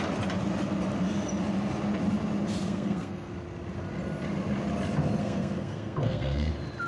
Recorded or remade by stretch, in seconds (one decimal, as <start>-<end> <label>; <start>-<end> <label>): 0.0-2.6 recorded; 2.6-3.3 remade; 3.3-5.2 recorded; 5.2-6.5 remade; 6.5-6.9 recorded